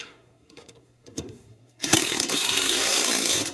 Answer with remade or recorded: remade